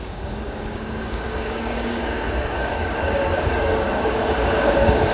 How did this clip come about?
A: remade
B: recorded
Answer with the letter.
A